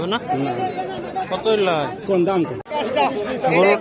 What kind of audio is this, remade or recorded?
recorded